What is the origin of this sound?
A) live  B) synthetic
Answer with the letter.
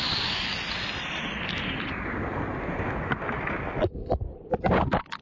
A